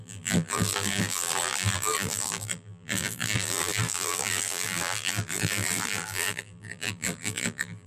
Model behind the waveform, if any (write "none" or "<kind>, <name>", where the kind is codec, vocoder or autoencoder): vocoder, BigVGAN v2